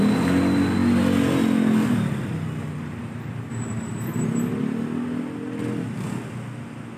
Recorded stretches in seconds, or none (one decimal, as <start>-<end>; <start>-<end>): 0.0-7.0